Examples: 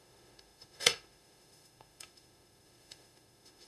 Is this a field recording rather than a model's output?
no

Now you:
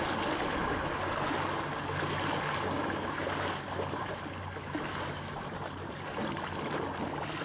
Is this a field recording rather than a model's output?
yes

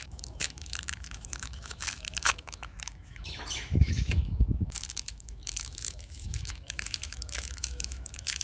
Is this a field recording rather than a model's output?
no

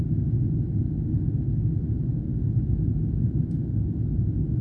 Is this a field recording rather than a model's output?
yes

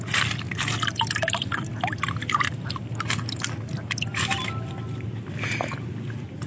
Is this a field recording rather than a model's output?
yes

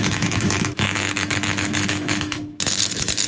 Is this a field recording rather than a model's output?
no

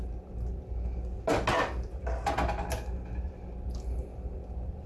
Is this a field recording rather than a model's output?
yes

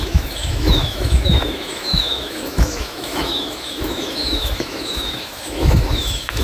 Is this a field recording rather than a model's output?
no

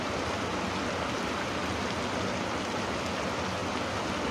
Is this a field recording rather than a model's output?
yes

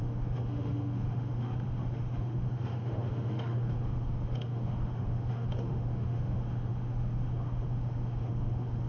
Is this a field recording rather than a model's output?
no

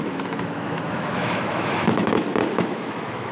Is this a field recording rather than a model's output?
no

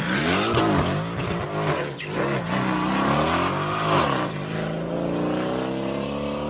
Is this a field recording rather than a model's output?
yes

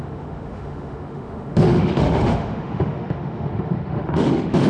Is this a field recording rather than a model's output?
no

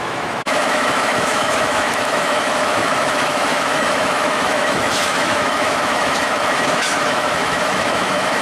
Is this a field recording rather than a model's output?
no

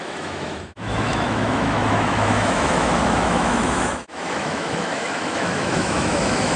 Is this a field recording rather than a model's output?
no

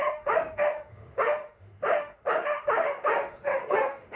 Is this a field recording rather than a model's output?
no